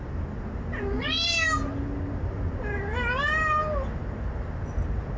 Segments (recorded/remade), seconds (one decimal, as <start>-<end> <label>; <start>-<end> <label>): 0.0-5.2 recorded